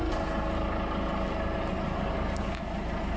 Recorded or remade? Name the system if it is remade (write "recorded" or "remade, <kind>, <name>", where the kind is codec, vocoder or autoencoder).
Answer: recorded